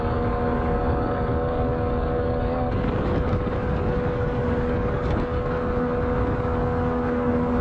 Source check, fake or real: fake